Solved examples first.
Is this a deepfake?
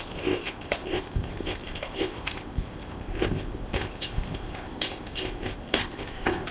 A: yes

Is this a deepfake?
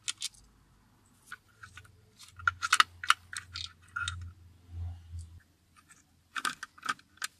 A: no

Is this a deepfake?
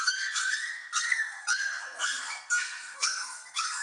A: yes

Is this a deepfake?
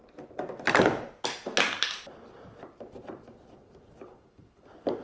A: no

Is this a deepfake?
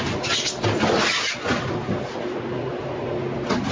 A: no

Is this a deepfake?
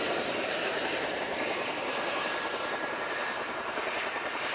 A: yes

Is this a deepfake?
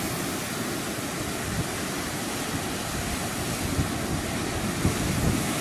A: no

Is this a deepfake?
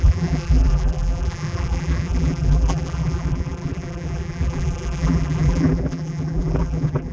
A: yes